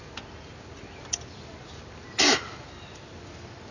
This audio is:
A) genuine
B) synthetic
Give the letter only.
A